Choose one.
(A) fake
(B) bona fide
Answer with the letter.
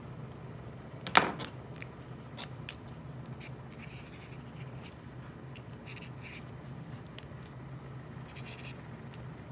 B